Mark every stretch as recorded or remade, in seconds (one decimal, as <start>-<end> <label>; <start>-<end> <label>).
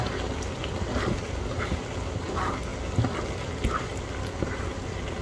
0.0-5.2 recorded